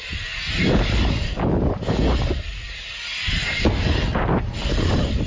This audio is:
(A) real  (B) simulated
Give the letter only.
A